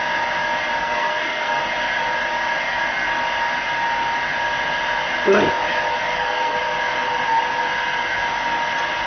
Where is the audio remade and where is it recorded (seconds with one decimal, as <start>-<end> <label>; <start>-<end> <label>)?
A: 0.0-0.8 recorded; 0.8-1.6 remade; 1.6-6.1 recorded; 6.1-6.6 remade; 6.6-9.1 recorded